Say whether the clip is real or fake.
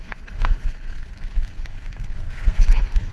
fake